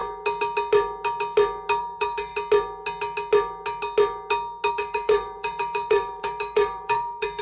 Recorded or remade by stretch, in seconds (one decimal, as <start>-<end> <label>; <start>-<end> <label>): 0.0-1.8 recorded; 1.8-2.3 remade; 2.3-4.7 recorded; 4.7-7.4 remade